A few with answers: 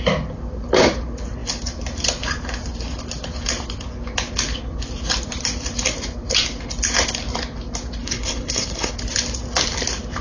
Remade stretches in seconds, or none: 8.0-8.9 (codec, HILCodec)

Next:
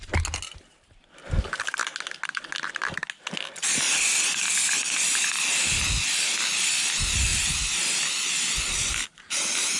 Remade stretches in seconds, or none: none